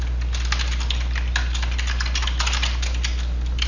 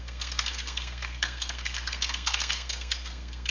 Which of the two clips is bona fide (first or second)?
first